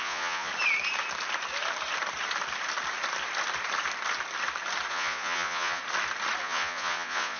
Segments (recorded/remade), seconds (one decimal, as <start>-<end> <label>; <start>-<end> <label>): 0.0-0.5 remade; 0.5-4.9 recorded; 4.9-5.8 remade; 5.8-6.4 recorded; 6.4-7.4 remade